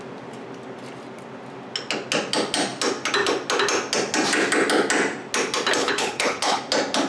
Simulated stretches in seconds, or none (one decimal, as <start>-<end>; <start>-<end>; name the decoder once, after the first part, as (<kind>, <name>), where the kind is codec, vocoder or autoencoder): 5.8-6.6 (codec, HILCodec)